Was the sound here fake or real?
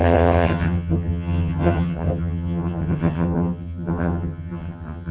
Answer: fake